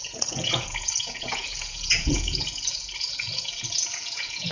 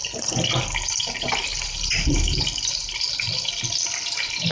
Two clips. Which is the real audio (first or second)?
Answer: second